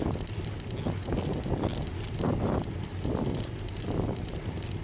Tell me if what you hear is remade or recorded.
recorded